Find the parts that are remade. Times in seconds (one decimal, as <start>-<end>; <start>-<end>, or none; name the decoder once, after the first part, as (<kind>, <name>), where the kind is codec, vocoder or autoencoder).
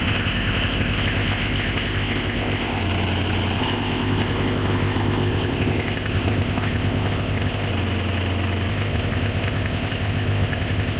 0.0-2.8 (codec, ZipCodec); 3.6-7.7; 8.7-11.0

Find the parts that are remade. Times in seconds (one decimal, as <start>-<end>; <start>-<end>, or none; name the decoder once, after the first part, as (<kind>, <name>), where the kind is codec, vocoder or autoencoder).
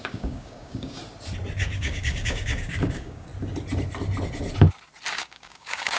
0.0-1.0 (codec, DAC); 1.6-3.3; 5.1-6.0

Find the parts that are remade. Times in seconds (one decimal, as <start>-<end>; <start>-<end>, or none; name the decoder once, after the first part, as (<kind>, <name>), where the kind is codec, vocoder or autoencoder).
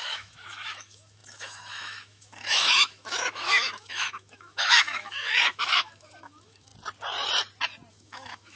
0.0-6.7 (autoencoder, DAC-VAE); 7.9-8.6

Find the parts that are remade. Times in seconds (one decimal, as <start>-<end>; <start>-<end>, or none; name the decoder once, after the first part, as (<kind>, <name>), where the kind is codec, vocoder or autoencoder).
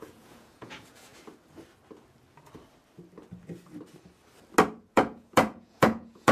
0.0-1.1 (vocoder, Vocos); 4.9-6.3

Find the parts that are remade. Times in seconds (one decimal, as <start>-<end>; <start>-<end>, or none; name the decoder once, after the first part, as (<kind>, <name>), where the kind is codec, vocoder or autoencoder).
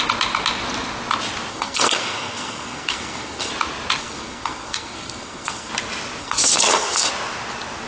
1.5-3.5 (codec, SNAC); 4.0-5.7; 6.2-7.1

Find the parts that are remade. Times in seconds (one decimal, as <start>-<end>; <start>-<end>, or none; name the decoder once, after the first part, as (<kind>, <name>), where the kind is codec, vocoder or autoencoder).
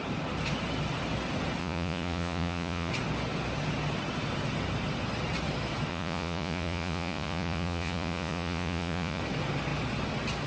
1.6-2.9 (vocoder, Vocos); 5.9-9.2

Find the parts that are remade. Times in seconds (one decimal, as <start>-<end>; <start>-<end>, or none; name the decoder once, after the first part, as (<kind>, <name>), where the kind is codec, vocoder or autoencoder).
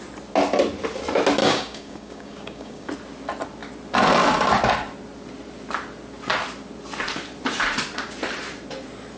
1.4-2.9 (codec, DAC)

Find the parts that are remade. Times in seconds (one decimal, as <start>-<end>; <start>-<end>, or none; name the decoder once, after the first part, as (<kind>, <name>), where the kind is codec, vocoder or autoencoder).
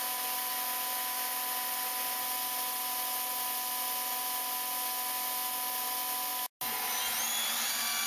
none